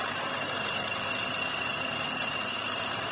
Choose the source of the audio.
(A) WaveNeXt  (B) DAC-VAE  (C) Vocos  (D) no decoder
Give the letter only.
D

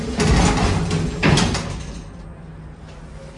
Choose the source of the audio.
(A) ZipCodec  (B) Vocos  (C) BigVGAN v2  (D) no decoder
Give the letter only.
D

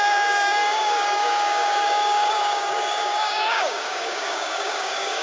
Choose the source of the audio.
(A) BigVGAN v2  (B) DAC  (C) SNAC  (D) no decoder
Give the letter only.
B